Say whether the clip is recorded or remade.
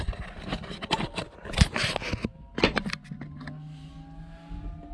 recorded